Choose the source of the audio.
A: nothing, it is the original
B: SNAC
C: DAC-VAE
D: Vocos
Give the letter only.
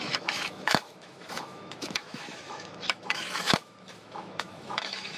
C